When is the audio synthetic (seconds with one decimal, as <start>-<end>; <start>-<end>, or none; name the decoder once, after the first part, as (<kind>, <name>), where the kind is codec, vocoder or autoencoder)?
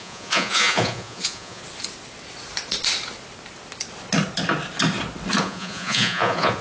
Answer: 0.0-1.6 (vocoder, Vocos); 5.4-6.6